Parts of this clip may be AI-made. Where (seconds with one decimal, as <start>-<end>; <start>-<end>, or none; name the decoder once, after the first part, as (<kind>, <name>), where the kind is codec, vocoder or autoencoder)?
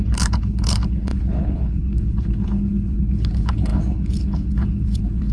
0.0-5.3 (codec, HILCodec)